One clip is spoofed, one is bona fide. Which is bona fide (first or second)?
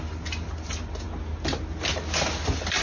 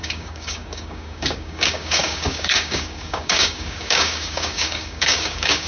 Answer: first